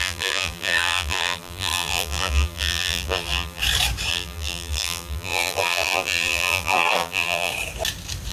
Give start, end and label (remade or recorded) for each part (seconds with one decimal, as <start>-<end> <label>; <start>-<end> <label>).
0.0-3.6 remade; 3.6-4.1 recorded; 4.1-7.5 remade; 7.5-8.3 recorded